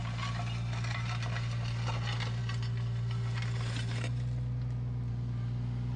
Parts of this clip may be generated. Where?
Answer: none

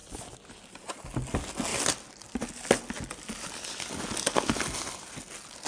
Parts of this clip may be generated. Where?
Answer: none

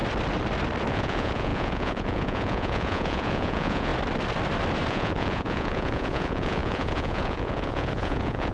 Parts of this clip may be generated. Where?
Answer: 0.9-3.9 (vocoder, Vocos); 4.9-8.5

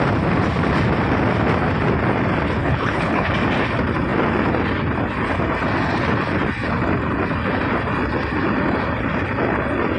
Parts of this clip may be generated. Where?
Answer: 2.6-3.3 (codec, HILCodec)